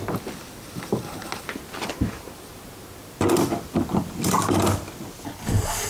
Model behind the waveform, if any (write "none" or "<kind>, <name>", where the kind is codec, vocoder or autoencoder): none